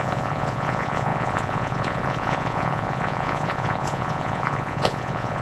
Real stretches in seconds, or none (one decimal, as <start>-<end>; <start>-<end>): none